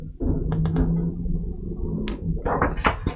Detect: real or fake real